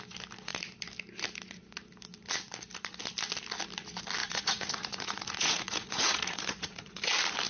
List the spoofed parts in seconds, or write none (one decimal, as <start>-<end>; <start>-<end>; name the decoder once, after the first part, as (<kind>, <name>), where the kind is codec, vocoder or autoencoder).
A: 4.2-7.1 (vocoder, Vocos)